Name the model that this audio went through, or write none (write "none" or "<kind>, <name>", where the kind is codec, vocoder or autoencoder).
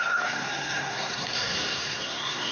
codec, SNAC